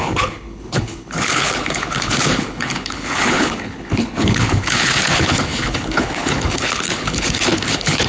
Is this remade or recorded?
remade